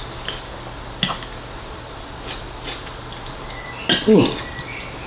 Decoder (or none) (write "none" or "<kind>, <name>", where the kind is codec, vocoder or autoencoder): none